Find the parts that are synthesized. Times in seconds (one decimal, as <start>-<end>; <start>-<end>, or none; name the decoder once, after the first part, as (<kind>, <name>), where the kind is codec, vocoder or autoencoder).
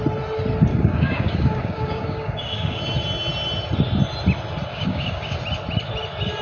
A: 0.7-2.8 (codec, DAC); 4.7-5.4